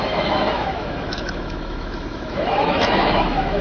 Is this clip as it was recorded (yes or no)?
no